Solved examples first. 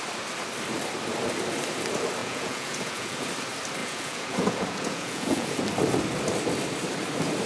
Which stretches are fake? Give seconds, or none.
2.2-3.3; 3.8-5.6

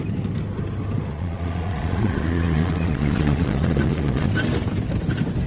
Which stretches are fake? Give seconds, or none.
1.1-4.3

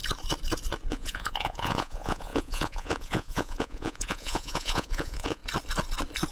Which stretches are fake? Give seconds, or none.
0.9-5.4

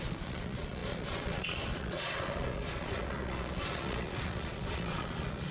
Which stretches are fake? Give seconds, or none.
0.0-5.5

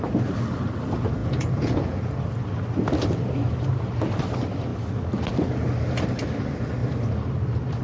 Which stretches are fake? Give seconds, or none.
1.2-2.1

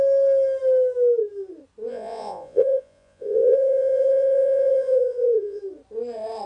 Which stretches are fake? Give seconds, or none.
1.9-5.6